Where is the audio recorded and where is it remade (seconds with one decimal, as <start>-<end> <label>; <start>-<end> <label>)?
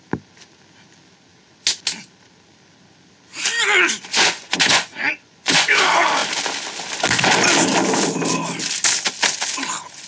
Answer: 0.0-4.1 recorded; 4.1-5.8 remade; 5.8-10.1 recorded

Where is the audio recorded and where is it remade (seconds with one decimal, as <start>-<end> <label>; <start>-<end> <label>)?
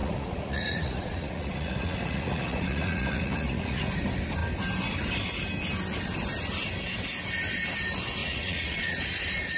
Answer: 0.0-3.9 remade; 3.9-8.2 recorded; 8.2-9.0 remade; 9.0-9.6 recorded